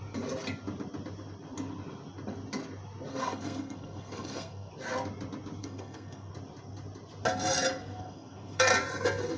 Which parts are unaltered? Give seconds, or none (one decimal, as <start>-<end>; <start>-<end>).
0.0-3.1; 4.7-5.6; 6.3-7.8; 8.7-9.4